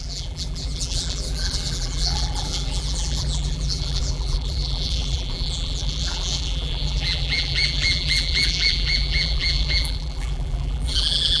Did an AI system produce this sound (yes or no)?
yes